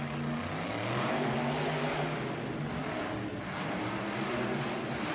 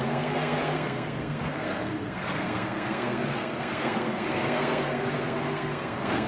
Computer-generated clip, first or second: second